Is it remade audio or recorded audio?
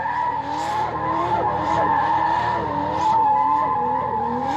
remade